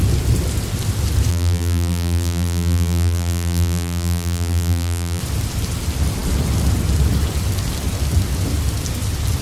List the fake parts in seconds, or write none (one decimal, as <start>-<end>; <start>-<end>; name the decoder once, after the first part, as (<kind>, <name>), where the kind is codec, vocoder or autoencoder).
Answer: 1.3-5.2 (vocoder, BigVGAN v2)